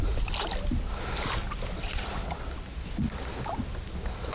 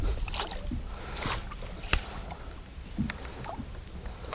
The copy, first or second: second